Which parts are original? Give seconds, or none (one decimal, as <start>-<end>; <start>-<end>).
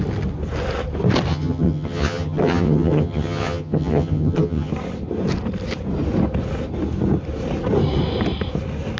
0.0-1.3; 4.7-9.0